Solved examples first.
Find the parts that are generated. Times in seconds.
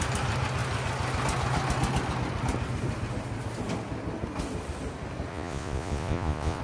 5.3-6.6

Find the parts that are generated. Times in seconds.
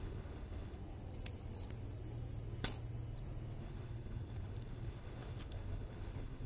0.0-0.8; 3.6-6.5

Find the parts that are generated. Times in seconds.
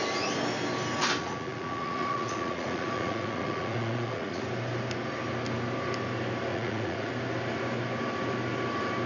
1.2-4.4; 6.5-7.1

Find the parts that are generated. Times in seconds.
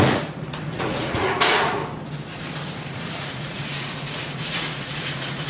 0.0-1.8; 2.9-5.5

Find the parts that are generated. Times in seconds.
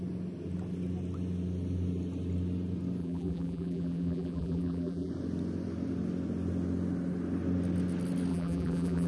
3.0-5.1; 8.3-9.1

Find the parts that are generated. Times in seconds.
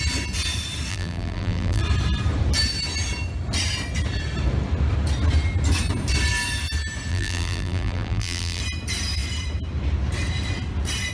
0.9-1.8; 7.1-8.6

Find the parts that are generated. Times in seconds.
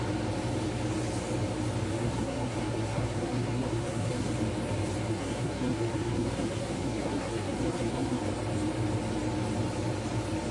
1.9-4.3; 5.1-8.2